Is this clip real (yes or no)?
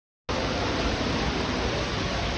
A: yes